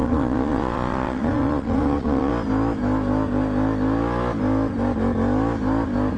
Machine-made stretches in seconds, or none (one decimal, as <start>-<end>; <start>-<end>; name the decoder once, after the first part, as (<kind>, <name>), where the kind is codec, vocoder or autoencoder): 0.0-2.3 (vocoder, Vocos)